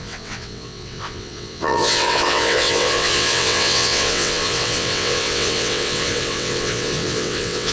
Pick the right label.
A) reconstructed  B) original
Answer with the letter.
A